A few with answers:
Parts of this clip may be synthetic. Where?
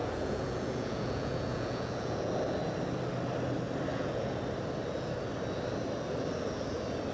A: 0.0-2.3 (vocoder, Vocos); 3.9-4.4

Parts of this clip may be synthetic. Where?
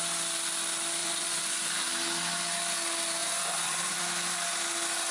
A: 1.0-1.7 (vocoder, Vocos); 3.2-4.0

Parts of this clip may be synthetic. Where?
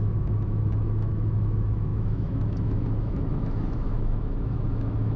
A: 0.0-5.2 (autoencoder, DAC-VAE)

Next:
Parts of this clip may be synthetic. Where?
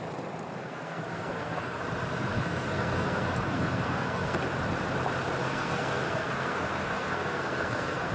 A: 0.6-1.8 (codec, SNAC); 2.3-4.4; 5.4-8.1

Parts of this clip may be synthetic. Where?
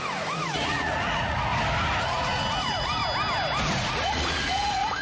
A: 0.0-1.5 (vocoder, Vocos); 2.0-3.0; 3.8-5.0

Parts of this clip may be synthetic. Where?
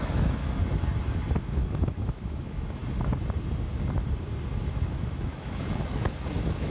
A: 0.0-0.4 (autoencoder, DAC-VAE); 1.4-2.8; 4.7-6.7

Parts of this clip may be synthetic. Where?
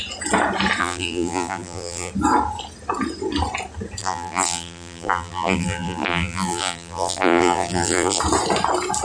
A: 0.8-2.1 (vocoder, BigVGAN v2); 4.0-8.2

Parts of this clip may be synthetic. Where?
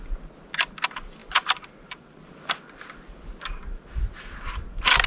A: 1.2-4.0 (vocoder, BigVGAN v2)